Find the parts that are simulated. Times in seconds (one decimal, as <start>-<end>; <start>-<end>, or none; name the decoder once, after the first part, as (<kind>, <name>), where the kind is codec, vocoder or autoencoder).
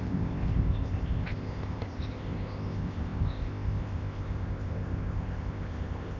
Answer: 0.0-6.2 (codec, ZipCodec)